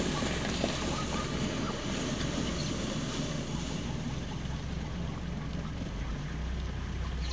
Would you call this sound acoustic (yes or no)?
yes